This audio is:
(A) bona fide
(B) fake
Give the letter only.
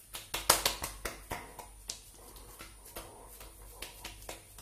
A